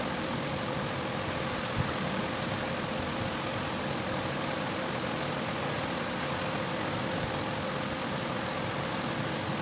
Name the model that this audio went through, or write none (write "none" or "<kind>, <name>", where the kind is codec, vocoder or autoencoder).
none